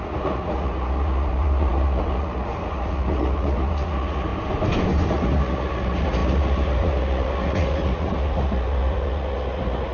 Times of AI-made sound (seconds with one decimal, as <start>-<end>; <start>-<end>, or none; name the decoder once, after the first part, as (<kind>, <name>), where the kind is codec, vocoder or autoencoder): 0.0-4.3 (vocoder, Vocos); 5.1-9.9